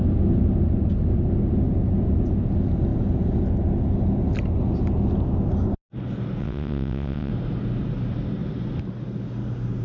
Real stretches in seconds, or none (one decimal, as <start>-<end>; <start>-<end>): 0.0-6.4; 7.3-9.8